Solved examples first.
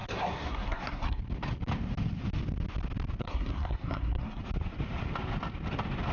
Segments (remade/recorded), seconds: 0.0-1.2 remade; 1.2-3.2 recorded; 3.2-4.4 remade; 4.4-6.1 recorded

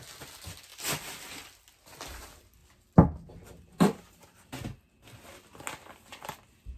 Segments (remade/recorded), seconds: 0.0-6.8 recorded

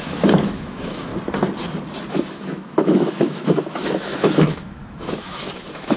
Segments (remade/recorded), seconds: 0.0-1.1 remade; 1.1-2.1 recorded; 2.1-6.0 remade